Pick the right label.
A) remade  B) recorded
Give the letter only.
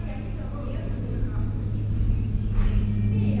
B